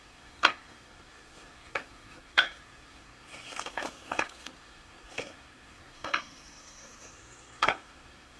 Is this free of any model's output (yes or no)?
no